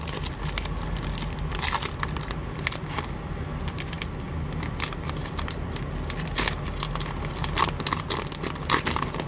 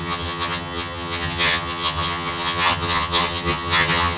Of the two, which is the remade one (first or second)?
second